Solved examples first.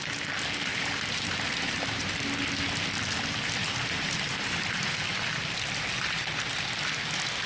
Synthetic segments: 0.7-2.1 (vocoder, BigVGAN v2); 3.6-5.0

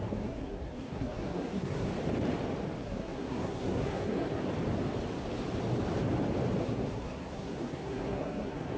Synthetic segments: 0.0-1.9 (codec, SNAC); 2.8-4.4; 6.6-8.8

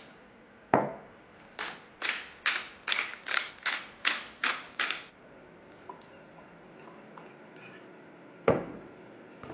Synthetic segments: 1.5-3.5 (vocoder, BigVGAN v2); 4.4-5.2

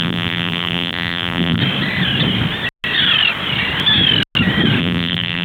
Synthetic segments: 0.0-1.6 (vocoder, BigVGAN v2); 4.8-5.4

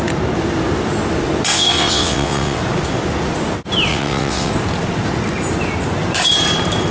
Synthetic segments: 1.5-2.6 (vocoder, WaveNeXt); 3.9-4.5

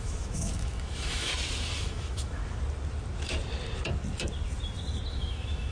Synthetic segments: 0.0-1.3 (autoencoder, DAC-VAE); 1.8-2.4; 5.1-5.7

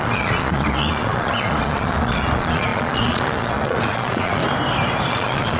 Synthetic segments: 0.0-4.4 (vocoder, Vocos); 5.1-5.6